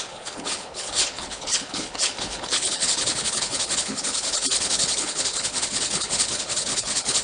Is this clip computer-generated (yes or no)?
yes